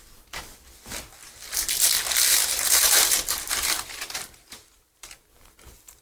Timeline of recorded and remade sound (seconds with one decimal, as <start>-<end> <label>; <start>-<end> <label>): 0.0-2.3 recorded; 2.3-6.0 remade